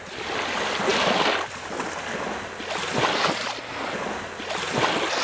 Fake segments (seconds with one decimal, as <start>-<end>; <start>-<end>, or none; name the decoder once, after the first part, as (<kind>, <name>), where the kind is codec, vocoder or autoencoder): none